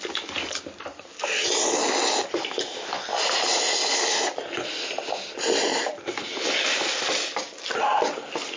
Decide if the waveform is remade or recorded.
recorded